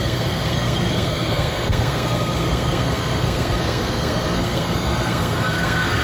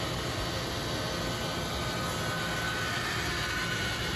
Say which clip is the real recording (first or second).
second